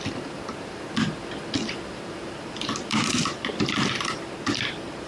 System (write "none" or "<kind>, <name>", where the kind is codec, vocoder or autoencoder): vocoder, BigVGAN v2